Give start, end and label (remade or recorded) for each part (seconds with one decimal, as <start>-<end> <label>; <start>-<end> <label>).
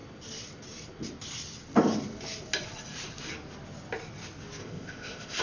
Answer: 0.0-4.6 recorded; 4.6-5.4 remade